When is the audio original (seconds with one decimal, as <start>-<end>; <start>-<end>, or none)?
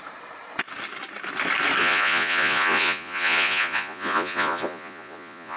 0.0-1.8